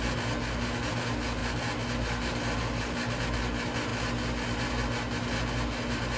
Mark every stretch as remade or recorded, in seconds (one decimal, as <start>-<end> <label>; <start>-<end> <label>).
0.0-6.2 recorded